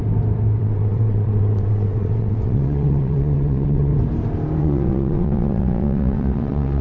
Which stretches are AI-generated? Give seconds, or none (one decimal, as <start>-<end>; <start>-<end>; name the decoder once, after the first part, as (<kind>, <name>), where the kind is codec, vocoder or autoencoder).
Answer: 0.6-3.9 (vocoder, WaveNeXt); 4.6-6.8